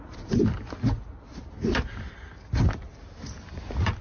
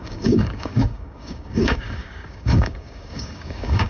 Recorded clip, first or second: first